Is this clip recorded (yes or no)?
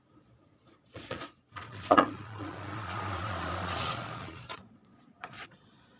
no